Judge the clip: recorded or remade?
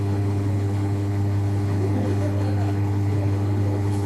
remade